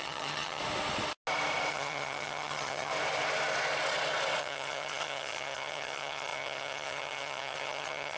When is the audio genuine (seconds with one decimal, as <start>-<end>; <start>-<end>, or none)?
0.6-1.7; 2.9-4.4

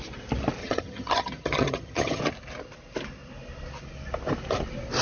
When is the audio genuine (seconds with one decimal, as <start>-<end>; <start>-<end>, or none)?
0.0-0.6; 2.2-5.0

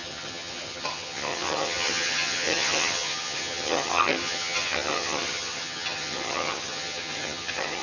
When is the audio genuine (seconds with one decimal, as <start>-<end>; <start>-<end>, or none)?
none

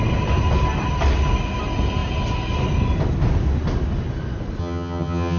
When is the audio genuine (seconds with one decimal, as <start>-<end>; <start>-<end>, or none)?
0.0-4.6

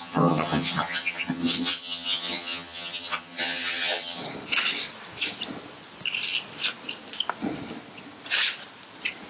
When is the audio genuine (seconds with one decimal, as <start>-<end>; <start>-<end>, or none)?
4.2-9.3

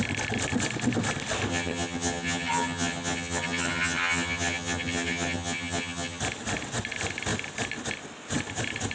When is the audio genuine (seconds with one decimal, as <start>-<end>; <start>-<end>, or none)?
0.0-1.5; 6.2-8.9